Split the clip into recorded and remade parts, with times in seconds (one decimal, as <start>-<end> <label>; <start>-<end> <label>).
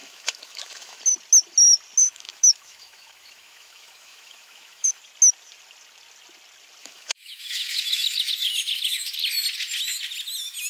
0.0-1.0 remade; 1.0-2.0 recorded; 2.0-5.0 remade; 5.0-6.8 recorded; 6.8-9.1 remade; 9.1-10.7 recorded